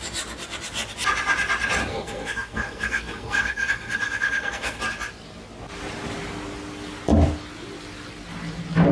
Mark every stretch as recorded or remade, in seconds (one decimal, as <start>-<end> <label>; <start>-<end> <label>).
0.0-1.9 recorded; 1.9-4.8 remade; 4.8-8.9 recorded